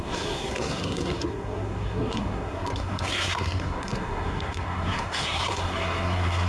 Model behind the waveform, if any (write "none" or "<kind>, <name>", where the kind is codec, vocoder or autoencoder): codec, SNAC